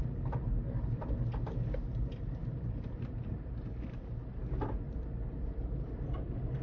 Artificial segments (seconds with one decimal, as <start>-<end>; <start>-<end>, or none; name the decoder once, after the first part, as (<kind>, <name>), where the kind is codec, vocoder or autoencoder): none

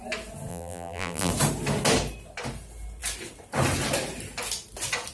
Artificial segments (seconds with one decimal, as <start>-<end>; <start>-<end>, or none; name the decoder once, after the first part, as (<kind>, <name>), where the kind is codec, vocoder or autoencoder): 0.5-1.3 (vocoder, BigVGAN v2)

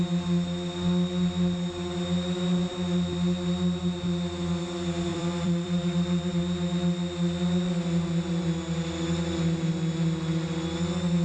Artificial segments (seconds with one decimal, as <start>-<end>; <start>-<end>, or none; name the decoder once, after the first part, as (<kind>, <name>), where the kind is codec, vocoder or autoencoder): 5.1-6.3 (vocoder, BigVGAN v2)

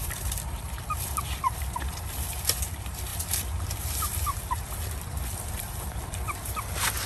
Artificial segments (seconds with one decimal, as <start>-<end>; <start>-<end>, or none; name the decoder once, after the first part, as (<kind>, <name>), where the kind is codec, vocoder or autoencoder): 0.0-7.1 (vocoder, BigVGAN v2)

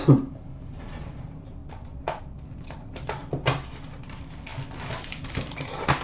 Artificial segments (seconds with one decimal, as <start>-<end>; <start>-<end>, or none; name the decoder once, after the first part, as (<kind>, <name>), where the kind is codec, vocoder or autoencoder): 0.0-1.6 (vocoder, BigVGAN v2); 2.2-3.2; 4.0-4.5; 5.2-6.0

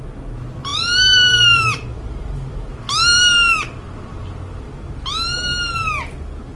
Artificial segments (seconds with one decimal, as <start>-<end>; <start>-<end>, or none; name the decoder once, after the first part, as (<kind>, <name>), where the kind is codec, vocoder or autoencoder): 0.7-4.7 (vocoder, BigVGAN v2)

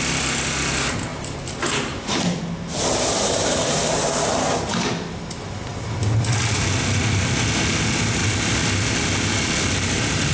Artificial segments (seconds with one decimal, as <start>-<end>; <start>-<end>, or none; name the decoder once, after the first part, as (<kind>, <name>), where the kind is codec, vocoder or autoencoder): 1.1-2.4 (vocoder, BigVGAN v2); 3.4-3.9; 8.2-10.3

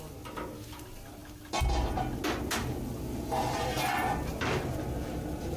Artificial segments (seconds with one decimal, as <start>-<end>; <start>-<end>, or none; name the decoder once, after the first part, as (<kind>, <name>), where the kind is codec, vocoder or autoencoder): none